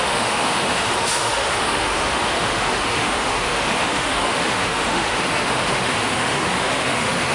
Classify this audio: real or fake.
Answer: fake